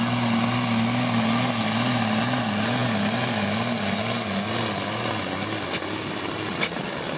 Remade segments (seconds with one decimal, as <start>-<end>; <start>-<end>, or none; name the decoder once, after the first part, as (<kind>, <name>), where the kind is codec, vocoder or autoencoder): none